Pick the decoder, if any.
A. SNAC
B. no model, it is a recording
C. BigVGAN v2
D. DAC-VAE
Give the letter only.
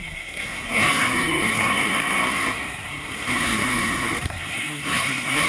A